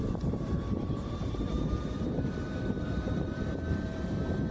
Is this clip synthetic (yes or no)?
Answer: yes